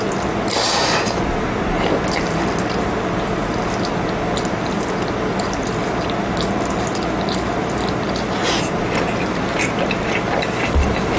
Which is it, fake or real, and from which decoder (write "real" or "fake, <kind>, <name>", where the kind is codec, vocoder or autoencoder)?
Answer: real